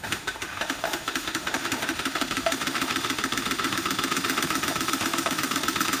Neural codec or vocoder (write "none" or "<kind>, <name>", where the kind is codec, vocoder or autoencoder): autoencoder, DAC-VAE